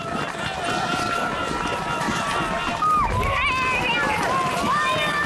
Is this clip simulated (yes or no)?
no